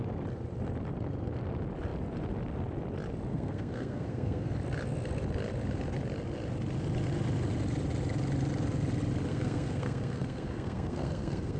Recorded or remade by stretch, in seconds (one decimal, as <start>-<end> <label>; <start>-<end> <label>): 0.0-3.3 recorded; 3.3-4.5 remade; 4.5-9.3 recorded; 9.3-11.6 remade